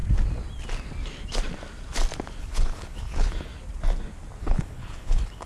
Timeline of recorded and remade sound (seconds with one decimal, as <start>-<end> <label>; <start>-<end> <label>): 0.0-2.4 recorded; 2.4-3.5 remade; 3.5-4.4 recorded; 4.4-5.5 remade